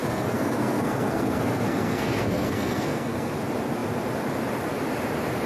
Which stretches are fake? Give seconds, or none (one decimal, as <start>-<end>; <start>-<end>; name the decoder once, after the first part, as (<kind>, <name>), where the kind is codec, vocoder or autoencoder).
0.0-3.3 (codec, SNAC)